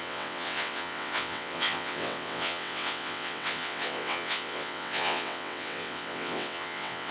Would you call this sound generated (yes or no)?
yes